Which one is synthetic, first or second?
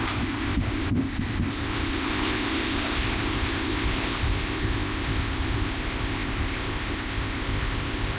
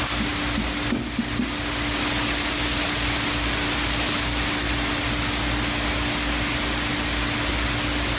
first